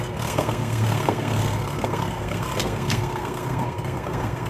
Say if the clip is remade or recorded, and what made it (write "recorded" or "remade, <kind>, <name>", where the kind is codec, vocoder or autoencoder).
remade, codec, SNAC